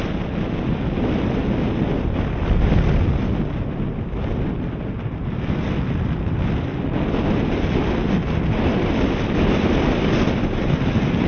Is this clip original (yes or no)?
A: yes